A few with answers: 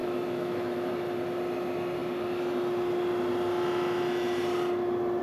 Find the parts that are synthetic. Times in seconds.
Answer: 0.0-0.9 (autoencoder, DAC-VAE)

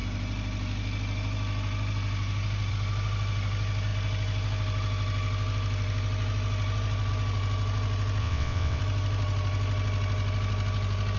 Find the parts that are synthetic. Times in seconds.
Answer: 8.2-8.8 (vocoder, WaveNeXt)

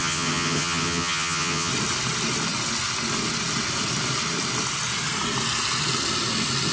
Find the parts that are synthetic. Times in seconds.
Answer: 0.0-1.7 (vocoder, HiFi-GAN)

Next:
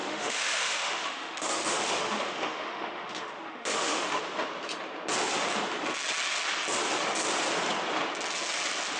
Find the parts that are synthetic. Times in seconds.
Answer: 0.0-4.2 (autoencoder, DAC-VAE)